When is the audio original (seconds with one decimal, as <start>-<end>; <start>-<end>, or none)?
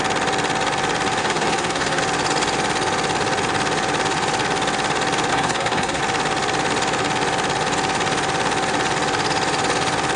0.0-1.2; 2.0-5.3; 6.0-10.2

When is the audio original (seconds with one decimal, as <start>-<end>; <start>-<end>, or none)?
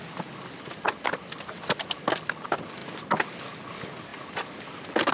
0.0-5.1